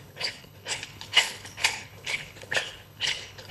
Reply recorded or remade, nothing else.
remade